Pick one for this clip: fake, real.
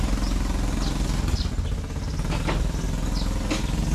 real